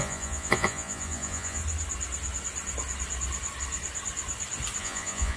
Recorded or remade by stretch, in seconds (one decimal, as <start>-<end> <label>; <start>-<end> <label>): 0.0-1.6 remade; 1.6-4.8 recorded; 4.8-5.4 remade